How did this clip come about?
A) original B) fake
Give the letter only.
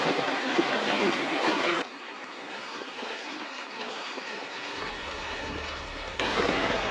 B